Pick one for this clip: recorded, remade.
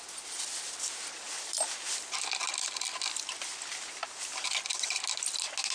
recorded